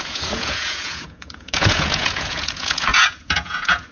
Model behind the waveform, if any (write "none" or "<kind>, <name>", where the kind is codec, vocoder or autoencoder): vocoder, Vocos